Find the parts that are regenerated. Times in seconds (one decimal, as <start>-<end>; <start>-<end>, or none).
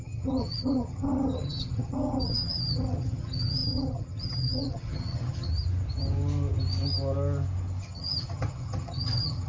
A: 0.0-5.5; 7.8-9.5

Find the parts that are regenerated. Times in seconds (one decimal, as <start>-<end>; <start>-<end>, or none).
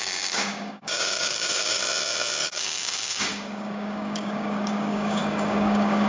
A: 0.0-1.8; 2.4-6.1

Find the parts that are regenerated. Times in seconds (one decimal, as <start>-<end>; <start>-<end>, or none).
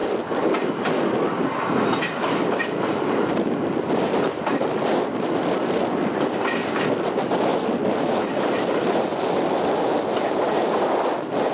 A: none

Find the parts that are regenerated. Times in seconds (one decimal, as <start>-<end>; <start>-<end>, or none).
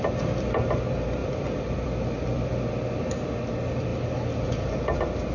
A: 1.2-2.7; 3.9-4.7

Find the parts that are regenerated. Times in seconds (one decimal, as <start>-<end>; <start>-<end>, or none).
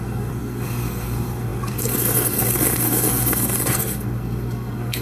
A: 0.0-5.0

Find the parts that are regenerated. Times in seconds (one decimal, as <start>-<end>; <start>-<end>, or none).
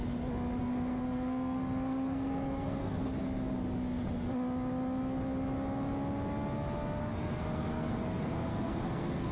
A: 0.6-3.1; 7.0-9.3